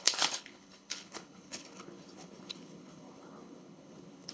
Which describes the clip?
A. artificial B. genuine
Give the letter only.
A